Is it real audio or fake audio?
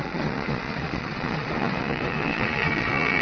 fake